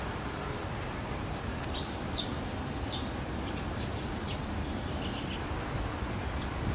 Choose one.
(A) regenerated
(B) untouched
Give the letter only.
B